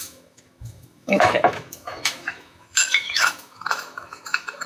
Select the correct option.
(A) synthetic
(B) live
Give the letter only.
A